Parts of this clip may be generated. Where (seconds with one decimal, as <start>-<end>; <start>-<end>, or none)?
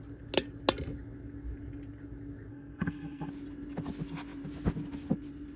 2.5-3.3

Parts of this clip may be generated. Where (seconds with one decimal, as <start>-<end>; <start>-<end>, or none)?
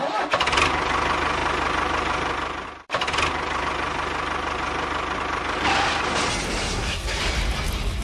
6.6-7.2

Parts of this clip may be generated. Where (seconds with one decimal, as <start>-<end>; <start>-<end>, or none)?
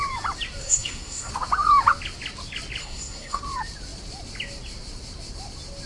0.6-1.3; 2.8-3.4